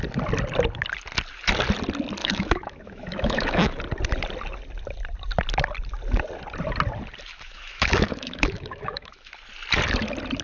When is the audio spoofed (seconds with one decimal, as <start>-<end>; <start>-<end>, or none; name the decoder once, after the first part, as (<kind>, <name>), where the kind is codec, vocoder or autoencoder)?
2.2-3.8 (autoencoder, DAC-VAE); 7.3-9.3